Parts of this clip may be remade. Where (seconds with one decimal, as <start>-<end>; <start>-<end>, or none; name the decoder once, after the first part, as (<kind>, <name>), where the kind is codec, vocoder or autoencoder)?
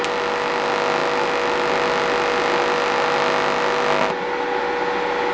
none